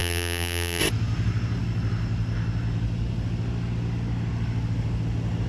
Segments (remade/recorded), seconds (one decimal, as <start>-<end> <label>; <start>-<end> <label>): 0.0-0.8 remade; 0.8-5.5 recorded